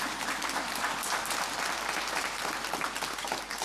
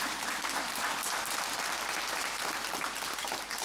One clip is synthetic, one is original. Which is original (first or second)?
first